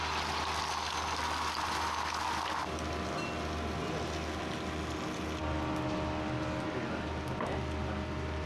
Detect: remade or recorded recorded